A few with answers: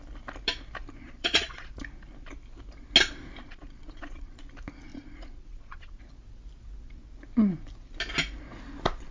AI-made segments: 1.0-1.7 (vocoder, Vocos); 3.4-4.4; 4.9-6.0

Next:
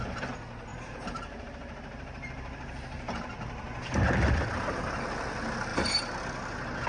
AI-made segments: 0.7-4.8 (vocoder, BigVGAN v2); 5.7-6.2

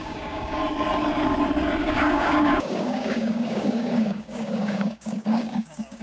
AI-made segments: 0.0-0.6 (codec, DAC); 1.8-6.0

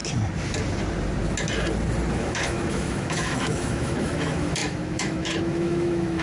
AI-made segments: 2.1-6.2 (autoencoder, DAC-VAE)

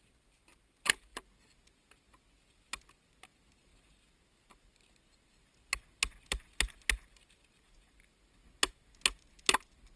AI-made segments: none

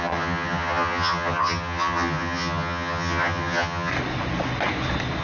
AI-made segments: 0.0-3.9 (vocoder, HiFi-GAN)

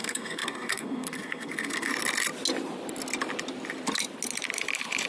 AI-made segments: 0.0-1.9 (codec, SNAC)

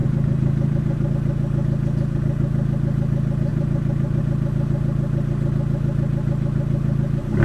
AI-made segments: 0.0-1.1 (vocoder, BigVGAN v2); 3.5-4.2